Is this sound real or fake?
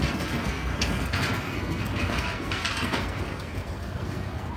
fake